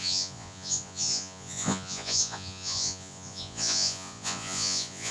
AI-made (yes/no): yes